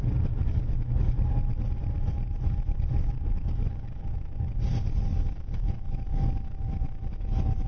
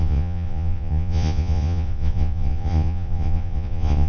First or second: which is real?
first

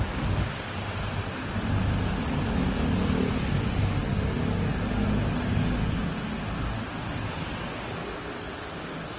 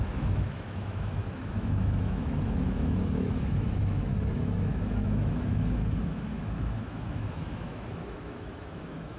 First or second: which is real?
first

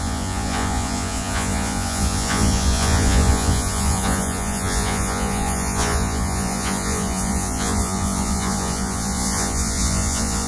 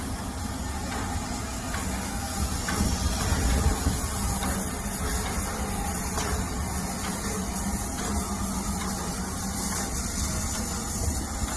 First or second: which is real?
second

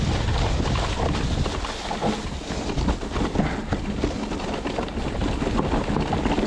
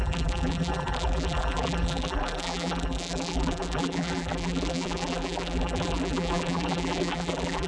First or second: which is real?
first